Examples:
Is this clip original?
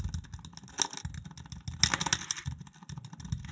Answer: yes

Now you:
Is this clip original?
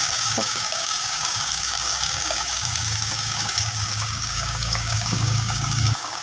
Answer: no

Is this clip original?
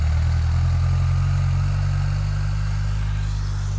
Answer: yes